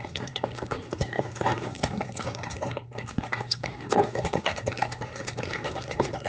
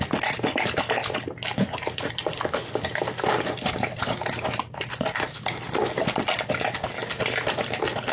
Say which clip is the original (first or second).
second